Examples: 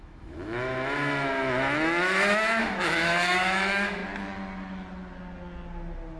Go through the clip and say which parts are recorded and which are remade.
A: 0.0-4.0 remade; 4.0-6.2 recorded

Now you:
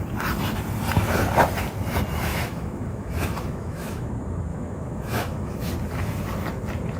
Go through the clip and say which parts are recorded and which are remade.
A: 0.0-2.3 recorded; 2.3-4.1 remade; 4.1-4.5 recorded; 4.5-5.7 remade; 5.7-7.0 recorded

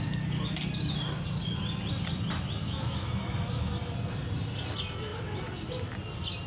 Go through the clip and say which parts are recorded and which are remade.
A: 0.0-2.6 recorded; 2.6-3.7 remade; 3.7-6.5 recorded

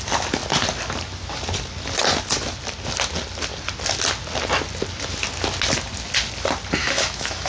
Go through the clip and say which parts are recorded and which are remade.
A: 0.0-6.8 recorded; 6.8-7.5 remade